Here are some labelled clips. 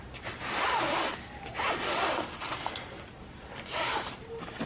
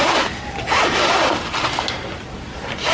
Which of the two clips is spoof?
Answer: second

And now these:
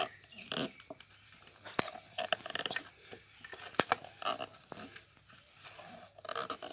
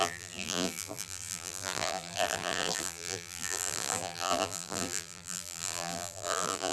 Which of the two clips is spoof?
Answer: second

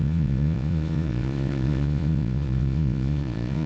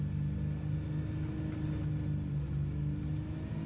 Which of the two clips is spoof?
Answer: first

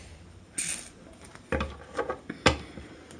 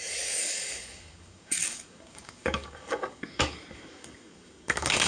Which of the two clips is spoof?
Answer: second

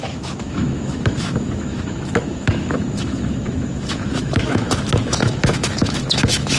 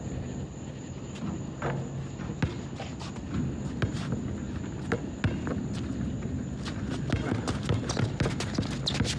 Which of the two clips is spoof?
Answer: first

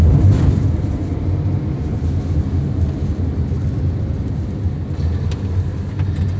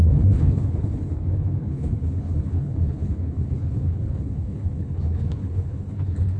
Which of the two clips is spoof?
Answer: second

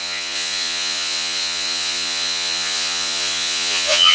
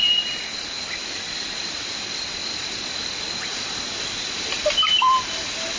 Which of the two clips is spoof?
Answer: first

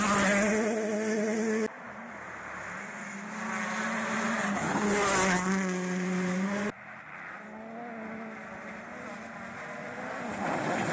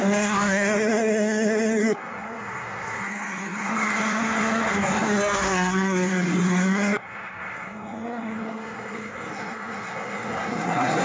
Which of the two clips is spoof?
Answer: second